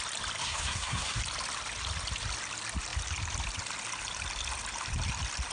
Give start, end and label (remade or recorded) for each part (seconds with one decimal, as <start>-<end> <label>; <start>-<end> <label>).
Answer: 0.0-0.4 recorded; 0.4-1.2 remade; 1.2-5.5 recorded

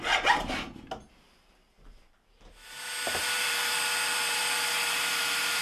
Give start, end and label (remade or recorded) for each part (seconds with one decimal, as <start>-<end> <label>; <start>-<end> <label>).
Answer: 0.0-3.2 recorded; 3.2-5.1 remade; 5.1-5.6 recorded

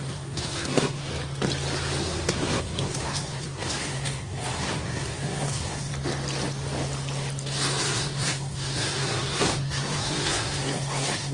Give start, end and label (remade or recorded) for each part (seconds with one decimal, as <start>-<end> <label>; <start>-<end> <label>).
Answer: 0.0-1.0 remade; 1.0-2.0 recorded; 2.0-5.9 remade; 5.9-7.8 recorded; 7.8-11.3 remade

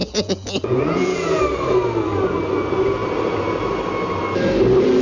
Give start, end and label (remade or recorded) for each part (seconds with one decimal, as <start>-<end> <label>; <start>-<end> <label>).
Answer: 0.0-1.4 remade; 1.4-5.0 recorded